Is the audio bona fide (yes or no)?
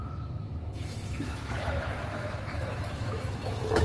no